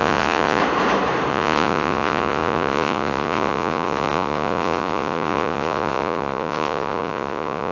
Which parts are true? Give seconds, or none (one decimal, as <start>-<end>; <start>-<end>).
0.6-1.3